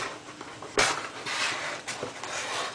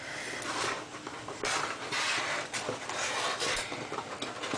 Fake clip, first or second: first